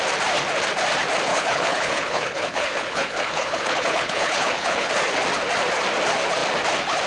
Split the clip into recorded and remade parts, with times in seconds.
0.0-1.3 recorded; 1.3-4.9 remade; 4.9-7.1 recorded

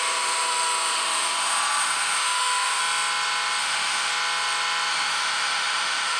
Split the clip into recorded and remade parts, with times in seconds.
0.0-2.8 remade; 2.8-3.6 recorded; 3.6-4.1 remade; 4.1-4.9 recorded; 4.9-6.2 remade

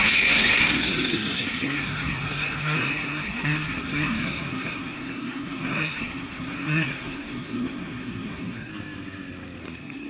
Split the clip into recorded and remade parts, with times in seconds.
0.0-8.7 remade; 8.7-9.6 recorded; 9.6-10.1 remade

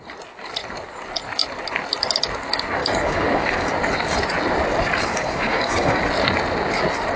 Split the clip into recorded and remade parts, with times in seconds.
0.0-2.8 recorded; 2.8-3.7 remade; 3.7-5.1 recorded; 5.1-6.0 remade; 6.0-7.2 recorded

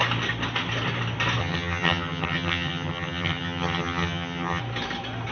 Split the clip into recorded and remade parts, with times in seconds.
0.0-1.4 recorded; 1.4-4.6 remade; 4.6-5.3 recorded